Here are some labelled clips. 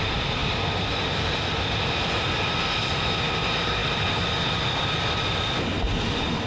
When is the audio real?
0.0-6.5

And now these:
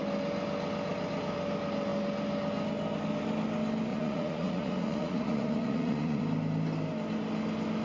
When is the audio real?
0.0-3.9; 6.2-7.8

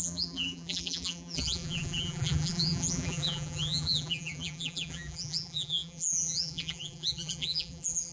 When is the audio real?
none

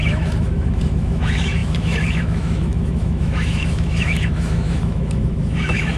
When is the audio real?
none

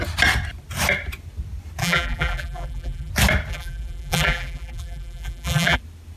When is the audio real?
0.0-1.8; 3.1-3.5; 5.8-6.2

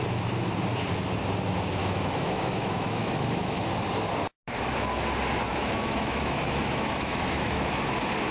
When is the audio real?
0.0-1.8; 3.7-5.5; 7.8-8.3

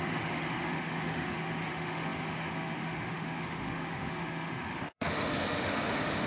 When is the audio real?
none

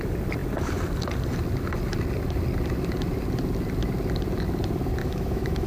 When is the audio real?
0.0-5.0